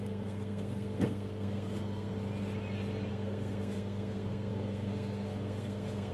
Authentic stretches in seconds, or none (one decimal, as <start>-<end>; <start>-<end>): 2.1-3.1